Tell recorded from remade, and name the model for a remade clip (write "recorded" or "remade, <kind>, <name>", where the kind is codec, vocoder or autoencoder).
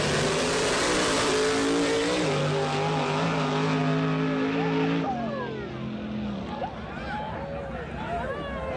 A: recorded